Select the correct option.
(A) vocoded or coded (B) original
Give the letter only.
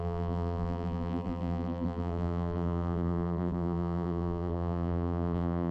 A